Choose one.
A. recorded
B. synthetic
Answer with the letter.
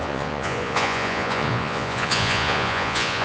B